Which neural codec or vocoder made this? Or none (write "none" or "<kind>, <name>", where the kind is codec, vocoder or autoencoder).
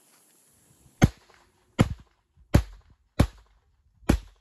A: none